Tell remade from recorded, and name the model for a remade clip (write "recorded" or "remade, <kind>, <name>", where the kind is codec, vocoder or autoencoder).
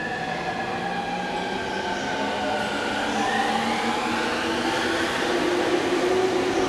recorded